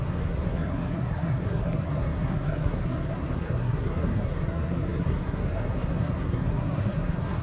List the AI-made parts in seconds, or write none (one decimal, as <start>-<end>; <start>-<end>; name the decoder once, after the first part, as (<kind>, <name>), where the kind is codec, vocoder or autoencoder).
0.0-7.4 (codec, SNAC)